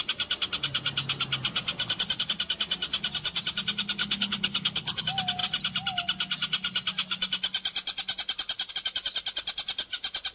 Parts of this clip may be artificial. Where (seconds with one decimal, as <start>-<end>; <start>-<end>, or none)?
4.0-5.0